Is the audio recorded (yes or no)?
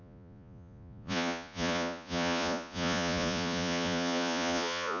no